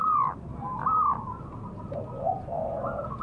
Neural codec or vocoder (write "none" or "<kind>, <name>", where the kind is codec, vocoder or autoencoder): none